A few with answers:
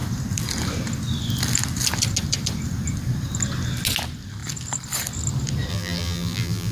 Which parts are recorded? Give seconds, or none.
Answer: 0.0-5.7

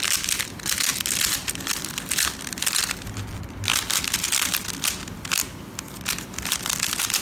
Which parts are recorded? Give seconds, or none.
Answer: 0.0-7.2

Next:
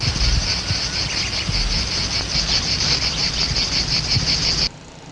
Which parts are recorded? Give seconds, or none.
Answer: 0.4-2.5

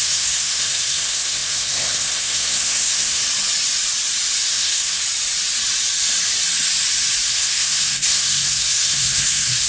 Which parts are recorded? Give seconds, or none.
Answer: 3.2-4.5; 5.0-7.3

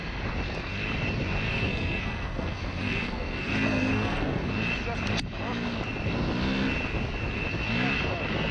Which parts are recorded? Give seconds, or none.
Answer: 0.0-1.5; 4.5-8.5

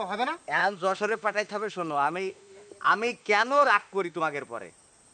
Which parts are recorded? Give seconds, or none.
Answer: 0.0-0.6; 2.7-3.2; 4.2-5.1